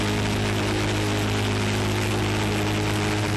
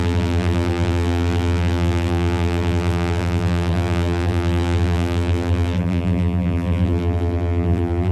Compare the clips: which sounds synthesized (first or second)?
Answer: second